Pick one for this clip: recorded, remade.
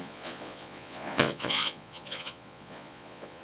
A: remade